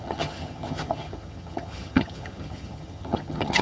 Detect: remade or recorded remade